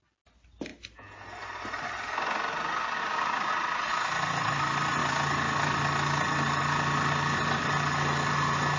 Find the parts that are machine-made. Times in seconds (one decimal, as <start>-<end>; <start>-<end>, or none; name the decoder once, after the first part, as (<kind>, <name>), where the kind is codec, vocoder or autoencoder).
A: 3.0-3.5 (codec, DAC)